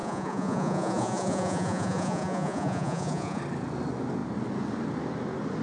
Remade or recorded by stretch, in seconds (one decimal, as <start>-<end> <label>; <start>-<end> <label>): 0.0-3.4 remade; 3.4-5.6 recorded